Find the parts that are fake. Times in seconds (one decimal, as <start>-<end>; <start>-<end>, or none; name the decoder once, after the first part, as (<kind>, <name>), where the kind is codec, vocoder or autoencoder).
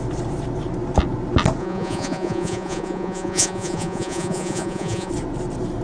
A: 1.6-5.1 (vocoder, Vocos)